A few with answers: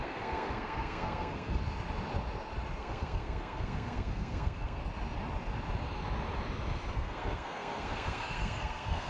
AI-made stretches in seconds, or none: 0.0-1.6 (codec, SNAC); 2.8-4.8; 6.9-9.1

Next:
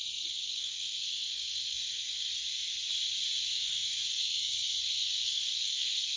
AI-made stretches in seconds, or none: 0.0-2.3 (codec, SNAC); 3.4-6.2